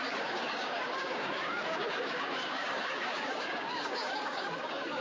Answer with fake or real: fake